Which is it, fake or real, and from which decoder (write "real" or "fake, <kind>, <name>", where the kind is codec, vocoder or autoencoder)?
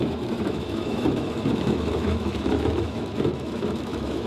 fake, autoencoder, DAC-VAE